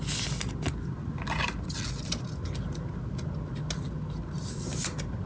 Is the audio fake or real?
real